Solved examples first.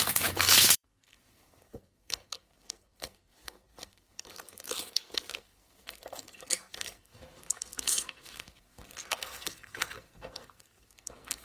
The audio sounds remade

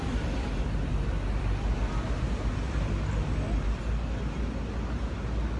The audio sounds recorded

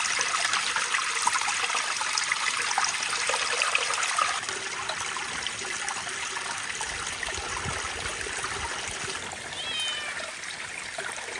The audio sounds recorded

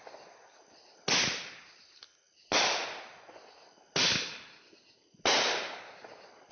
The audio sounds recorded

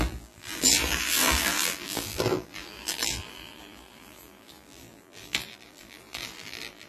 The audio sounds remade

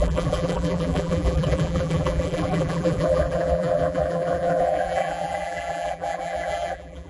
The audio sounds remade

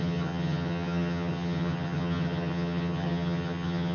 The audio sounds remade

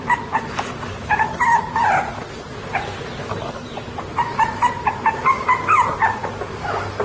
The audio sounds recorded